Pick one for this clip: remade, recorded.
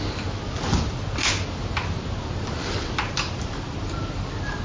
recorded